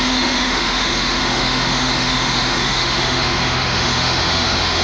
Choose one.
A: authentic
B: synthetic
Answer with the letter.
B